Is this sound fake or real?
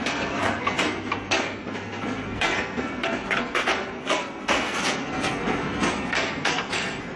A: fake